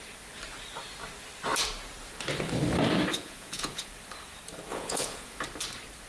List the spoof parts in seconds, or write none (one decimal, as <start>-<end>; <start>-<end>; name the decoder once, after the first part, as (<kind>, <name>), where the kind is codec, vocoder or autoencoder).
3.1-3.9 (vocoder, Vocos); 4.7-5.4